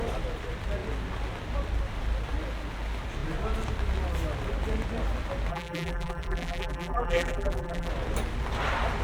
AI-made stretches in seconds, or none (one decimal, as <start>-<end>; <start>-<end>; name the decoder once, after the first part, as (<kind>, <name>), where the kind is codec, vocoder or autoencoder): 5.5-7.9 (vocoder, BigVGAN v2)